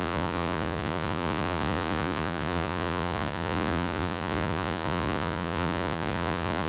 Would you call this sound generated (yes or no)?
yes